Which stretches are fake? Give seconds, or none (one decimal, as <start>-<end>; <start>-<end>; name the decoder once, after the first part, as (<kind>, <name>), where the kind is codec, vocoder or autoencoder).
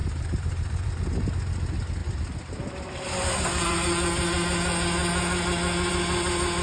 0.0-1.1 (vocoder, BigVGAN v2)